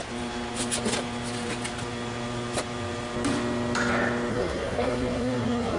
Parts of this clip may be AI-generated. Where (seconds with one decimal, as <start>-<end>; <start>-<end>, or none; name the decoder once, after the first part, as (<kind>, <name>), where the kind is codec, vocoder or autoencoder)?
4.3-5.8 (codec, SNAC)